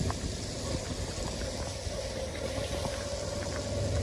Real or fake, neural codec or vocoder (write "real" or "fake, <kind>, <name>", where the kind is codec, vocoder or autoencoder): real